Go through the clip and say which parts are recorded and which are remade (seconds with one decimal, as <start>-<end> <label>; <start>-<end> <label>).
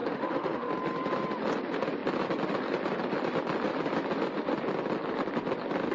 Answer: 0.0-0.7 remade; 0.7-5.9 recorded